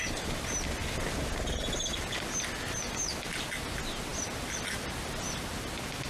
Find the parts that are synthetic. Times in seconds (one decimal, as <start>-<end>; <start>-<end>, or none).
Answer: none